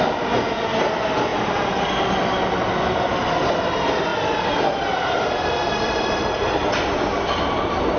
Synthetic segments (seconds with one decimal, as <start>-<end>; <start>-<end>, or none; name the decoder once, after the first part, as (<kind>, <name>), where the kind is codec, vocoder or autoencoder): 1.3-1.9 (vocoder, BigVGAN v2); 4.1-6.6